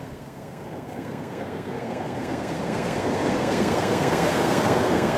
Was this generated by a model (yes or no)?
yes